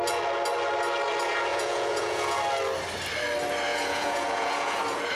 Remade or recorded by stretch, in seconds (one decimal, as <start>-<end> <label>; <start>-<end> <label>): 0.0-1.5 recorded; 1.5-2.4 remade; 2.4-3.7 recorded; 3.7-4.8 remade; 4.8-5.2 recorded